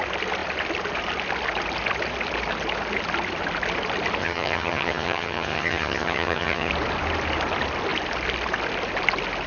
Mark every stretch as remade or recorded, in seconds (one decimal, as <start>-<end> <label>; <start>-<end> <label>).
0.0-4.2 recorded; 4.2-6.7 remade; 6.7-9.5 recorded